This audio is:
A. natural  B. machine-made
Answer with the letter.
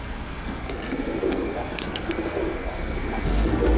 B